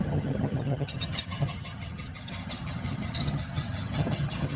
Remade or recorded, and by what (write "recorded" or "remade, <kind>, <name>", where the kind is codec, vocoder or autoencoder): remade, vocoder, HiFi-GAN